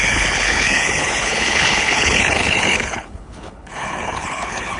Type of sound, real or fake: fake